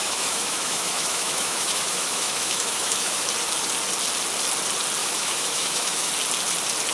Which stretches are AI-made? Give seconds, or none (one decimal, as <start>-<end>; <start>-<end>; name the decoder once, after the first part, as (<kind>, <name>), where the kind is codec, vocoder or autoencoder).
0.0-3.3 (autoencoder, DAC-VAE); 5.0-6.1